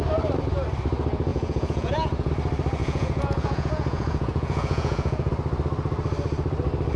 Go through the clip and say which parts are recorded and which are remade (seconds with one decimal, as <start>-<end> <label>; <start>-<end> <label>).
0.0-1.3 recorded; 1.3-2.3 remade; 2.3-2.8 recorded; 2.8-5.3 remade; 5.3-7.0 recorded